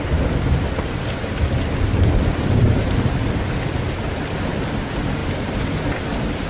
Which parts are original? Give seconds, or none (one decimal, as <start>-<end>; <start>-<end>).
0.0-6.5